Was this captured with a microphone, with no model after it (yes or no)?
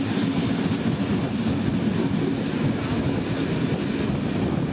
yes